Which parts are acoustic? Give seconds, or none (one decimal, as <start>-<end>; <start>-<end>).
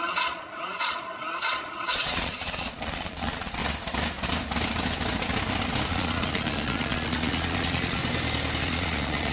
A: 3.6-5.9; 8.0-8.6